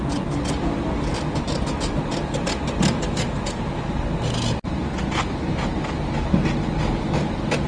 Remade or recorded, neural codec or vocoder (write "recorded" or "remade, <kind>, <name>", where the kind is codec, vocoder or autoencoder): recorded